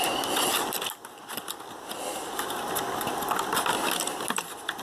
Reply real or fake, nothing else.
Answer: real